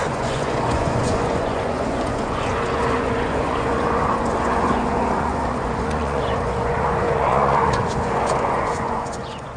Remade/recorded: remade